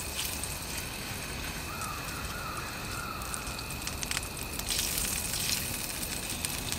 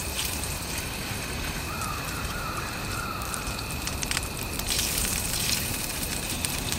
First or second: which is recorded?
first